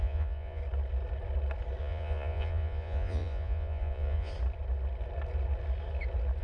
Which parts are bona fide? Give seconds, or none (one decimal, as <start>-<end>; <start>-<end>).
0.6-1.8; 4.3-6.4